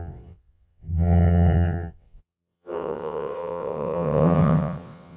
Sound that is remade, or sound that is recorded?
remade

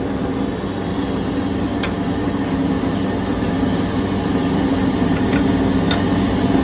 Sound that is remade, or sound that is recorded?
recorded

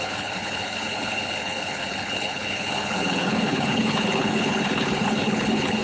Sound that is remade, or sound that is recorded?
remade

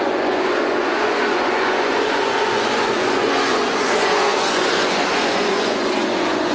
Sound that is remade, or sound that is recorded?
remade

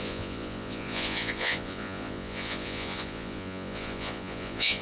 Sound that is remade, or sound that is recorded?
remade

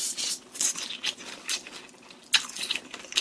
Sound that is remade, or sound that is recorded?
recorded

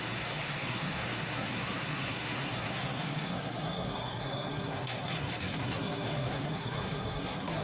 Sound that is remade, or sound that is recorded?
remade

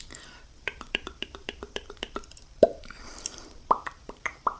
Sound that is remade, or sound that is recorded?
remade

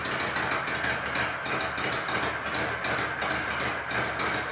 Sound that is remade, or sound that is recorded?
recorded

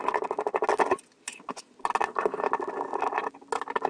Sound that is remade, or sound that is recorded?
recorded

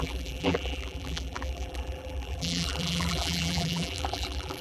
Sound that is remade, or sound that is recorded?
remade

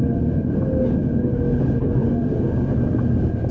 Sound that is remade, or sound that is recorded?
recorded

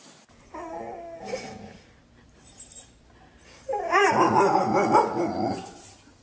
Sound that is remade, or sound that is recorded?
recorded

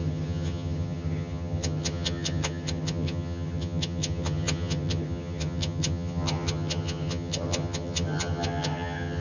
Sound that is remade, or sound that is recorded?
remade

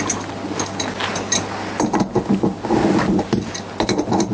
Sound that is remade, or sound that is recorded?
recorded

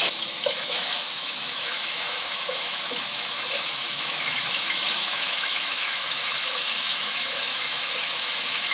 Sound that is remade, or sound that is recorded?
remade